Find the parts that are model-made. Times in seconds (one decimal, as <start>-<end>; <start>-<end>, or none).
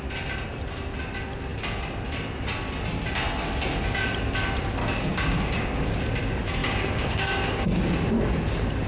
4.8-6.0; 6.6-7.8